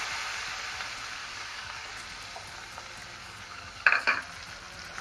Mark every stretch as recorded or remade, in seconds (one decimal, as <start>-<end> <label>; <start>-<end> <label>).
0.0-1.2 recorded; 1.2-1.9 remade; 1.9-3.2 recorded; 3.2-4.2 remade; 4.2-5.0 recorded